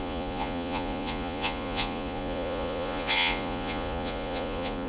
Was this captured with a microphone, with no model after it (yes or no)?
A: no